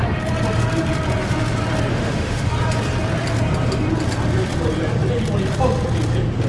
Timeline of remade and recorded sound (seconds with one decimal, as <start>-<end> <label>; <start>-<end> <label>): 0.0-1.9 recorded; 1.9-2.5 remade; 2.5-6.5 recorded